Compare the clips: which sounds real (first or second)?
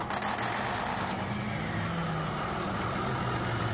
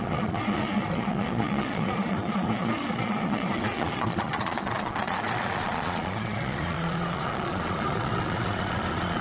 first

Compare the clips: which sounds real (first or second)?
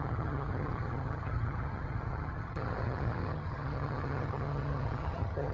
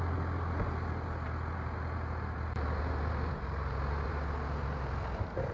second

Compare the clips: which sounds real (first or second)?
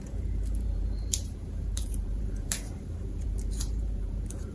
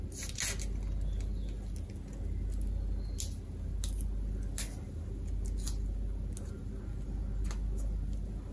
second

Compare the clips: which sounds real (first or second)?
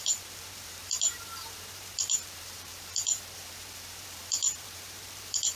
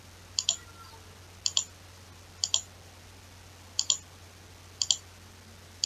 second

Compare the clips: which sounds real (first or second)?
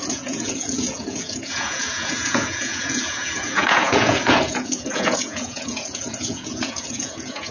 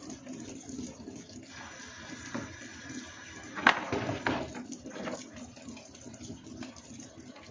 second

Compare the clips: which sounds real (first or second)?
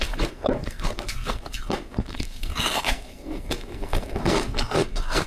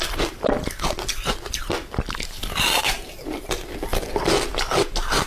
second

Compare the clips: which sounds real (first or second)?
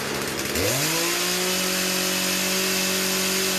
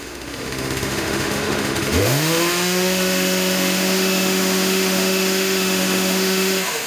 first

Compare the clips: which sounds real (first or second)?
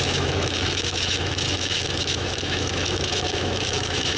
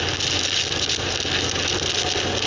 second